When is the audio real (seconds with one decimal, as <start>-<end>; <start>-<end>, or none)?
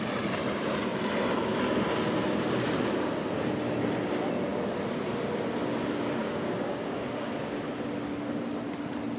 0.0-6.2; 7.7-9.2